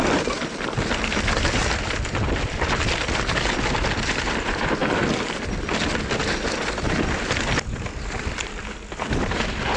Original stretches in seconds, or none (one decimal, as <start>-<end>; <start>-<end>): 0.0-9.8